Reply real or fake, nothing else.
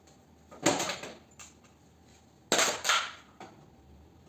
real